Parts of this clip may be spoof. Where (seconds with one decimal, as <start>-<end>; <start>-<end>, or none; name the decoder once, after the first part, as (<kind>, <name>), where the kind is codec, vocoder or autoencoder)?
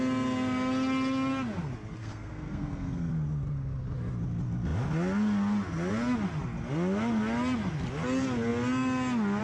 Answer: 2.0-3.1 (codec, SNAC)